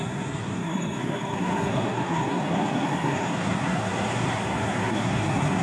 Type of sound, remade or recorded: remade